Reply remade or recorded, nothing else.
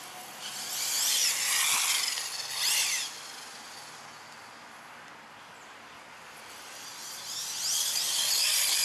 recorded